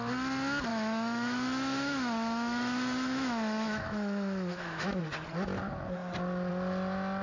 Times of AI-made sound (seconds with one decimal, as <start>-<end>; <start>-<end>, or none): 0.7-5.0